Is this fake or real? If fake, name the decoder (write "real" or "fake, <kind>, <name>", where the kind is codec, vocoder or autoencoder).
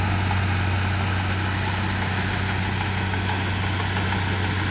real